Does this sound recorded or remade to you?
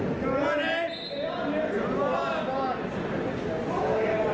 recorded